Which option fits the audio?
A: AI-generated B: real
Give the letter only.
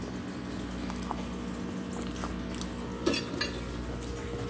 B